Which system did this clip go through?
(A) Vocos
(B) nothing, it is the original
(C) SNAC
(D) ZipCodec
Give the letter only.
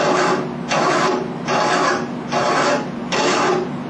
B